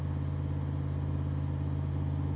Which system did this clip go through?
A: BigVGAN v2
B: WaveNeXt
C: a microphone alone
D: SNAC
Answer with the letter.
C